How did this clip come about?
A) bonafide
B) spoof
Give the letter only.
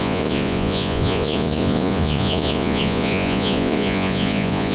B